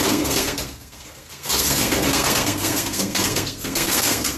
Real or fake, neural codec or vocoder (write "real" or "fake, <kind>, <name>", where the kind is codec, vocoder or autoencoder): fake, codec, SNAC